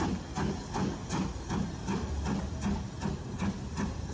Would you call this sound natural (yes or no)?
yes